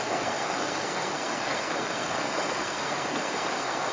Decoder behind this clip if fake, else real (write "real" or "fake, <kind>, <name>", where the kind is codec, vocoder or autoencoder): fake, codec, SNAC